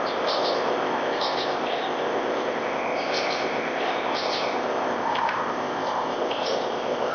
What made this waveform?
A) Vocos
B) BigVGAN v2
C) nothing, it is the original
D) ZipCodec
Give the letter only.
D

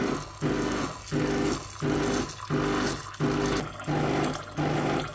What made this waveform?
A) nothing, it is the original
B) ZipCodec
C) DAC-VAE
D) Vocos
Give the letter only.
A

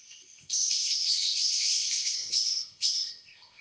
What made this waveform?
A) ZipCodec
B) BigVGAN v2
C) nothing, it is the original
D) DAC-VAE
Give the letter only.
A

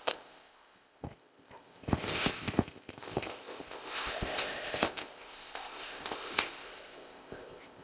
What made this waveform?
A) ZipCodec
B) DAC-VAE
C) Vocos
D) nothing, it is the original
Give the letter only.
A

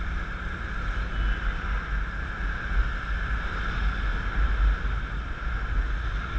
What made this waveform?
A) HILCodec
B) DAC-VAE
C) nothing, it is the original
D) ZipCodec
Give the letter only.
C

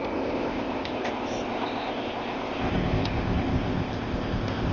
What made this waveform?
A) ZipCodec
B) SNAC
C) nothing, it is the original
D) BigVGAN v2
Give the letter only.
A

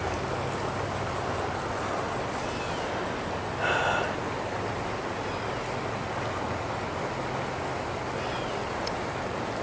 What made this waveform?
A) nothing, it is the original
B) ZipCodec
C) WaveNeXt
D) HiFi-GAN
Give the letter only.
A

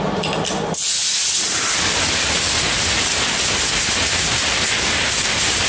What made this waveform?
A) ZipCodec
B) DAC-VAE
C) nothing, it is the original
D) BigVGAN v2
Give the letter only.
C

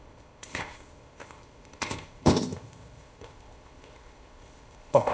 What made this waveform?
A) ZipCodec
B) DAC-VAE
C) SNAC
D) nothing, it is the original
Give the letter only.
A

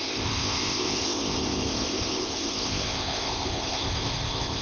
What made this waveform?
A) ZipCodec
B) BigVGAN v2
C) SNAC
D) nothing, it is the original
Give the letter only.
A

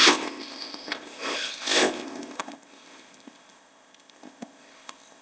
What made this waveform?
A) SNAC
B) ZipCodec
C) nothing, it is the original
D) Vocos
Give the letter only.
B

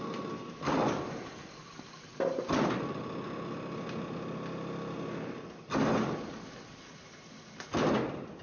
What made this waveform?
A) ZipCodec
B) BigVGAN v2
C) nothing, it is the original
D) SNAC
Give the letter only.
C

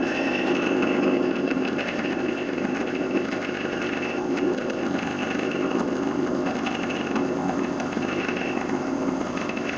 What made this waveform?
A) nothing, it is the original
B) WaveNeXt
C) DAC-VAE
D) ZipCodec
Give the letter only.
D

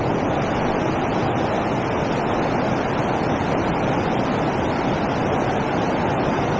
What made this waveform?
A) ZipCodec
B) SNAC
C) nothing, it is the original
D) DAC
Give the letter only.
C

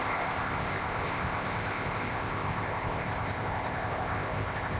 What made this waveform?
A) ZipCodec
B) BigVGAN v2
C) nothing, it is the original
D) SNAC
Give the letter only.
A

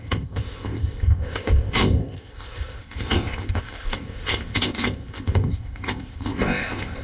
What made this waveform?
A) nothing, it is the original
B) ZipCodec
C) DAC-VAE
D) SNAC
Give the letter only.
B